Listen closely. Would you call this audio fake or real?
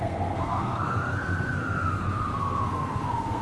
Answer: fake